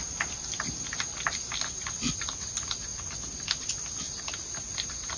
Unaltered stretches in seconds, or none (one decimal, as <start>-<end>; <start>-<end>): 0.0-5.2